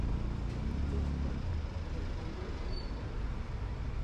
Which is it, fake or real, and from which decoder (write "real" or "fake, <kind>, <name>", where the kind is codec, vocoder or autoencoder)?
real